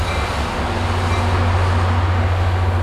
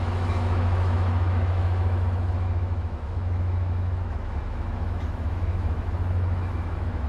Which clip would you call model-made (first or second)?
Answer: second